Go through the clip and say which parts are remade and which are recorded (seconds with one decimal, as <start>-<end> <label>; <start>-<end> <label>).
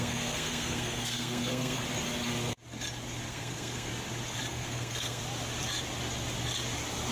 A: 0.0-1.8 remade; 1.8-3.3 recorded; 3.3-3.9 remade; 3.9-4.5 recorded; 4.5-5.2 remade; 5.2-7.1 recorded